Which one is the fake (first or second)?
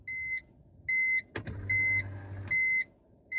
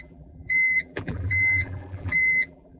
second